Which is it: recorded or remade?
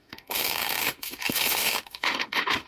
remade